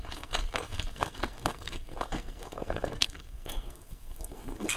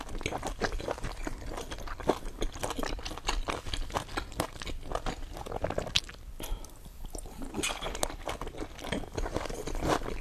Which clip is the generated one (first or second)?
first